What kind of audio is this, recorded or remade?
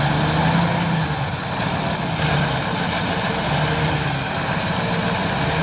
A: recorded